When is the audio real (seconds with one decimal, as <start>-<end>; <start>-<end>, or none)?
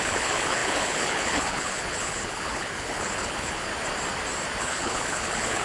3.7-4.6